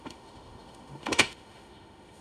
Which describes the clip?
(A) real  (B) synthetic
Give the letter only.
B